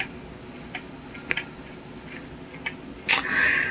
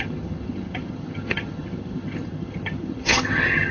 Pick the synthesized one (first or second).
second